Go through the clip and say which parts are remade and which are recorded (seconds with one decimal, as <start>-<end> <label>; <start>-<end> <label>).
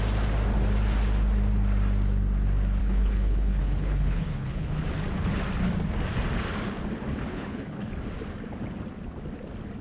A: 0.0-2.8 recorded; 2.8-4.7 remade; 4.7-7.3 recorded; 7.3-7.9 remade; 7.9-9.8 recorded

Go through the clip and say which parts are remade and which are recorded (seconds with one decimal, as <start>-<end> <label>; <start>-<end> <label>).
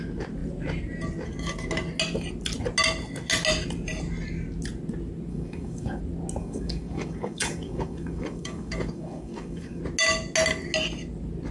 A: 0.0-5.3 recorded; 5.3-6.0 remade; 6.0-6.4 recorded; 6.4-9.8 remade; 9.8-11.5 recorded